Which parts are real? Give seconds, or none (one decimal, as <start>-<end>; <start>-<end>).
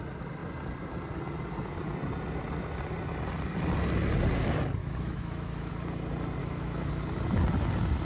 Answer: 0.0-4.8; 5.7-6.4; 6.9-8.0